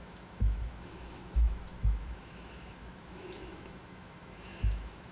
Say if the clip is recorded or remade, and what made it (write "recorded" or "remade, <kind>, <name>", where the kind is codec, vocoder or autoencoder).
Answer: remade, autoencoder, DAC-VAE